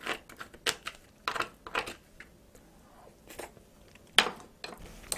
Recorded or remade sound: recorded